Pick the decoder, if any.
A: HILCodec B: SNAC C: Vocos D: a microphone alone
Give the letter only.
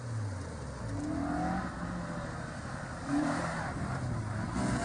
D